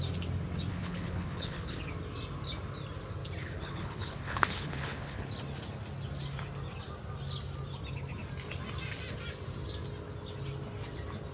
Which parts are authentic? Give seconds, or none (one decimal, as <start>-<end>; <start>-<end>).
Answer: 0.0-0.7; 1.8-3.4; 5.3-11.3